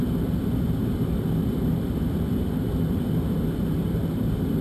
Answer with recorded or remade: recorded